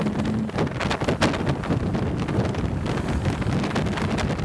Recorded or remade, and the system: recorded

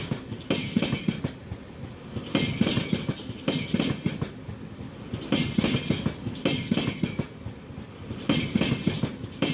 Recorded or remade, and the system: recorded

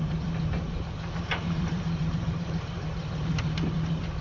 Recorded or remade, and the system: remade, vocoder, BigVGAN v2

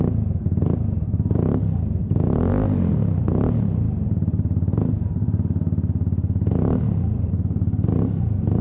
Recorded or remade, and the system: recorded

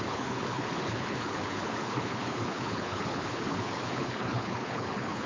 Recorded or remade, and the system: remade, codec, HILCodec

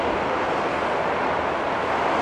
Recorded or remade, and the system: recorded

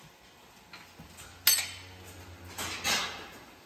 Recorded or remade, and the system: recorded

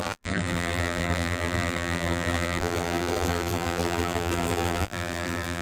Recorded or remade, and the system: remade, vocoder, BigVGAN v2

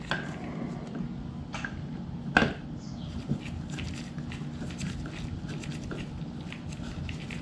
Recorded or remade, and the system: recorded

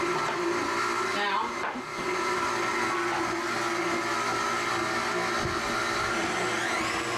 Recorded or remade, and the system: recorded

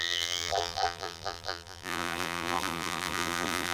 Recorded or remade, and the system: remade, vocoder, BigVGAN v2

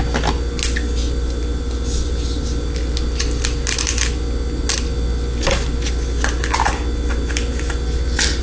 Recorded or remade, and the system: recorded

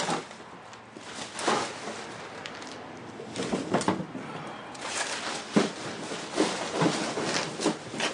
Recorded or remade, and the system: recorded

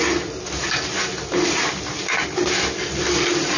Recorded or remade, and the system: recorded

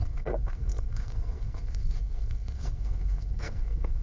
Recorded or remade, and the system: remade, codec, SNAC